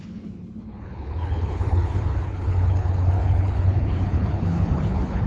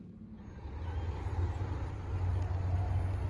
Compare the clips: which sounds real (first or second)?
second